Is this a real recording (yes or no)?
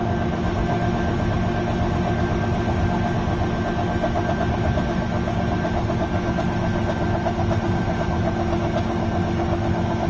yes